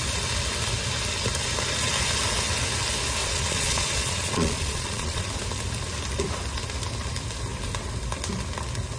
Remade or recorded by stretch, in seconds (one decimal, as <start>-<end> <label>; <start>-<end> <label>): 0.0-3.2 recorded; 3.2-5.3 remade; 5.3-9.0 recorded